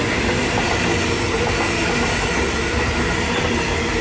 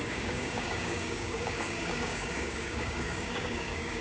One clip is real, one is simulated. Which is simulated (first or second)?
second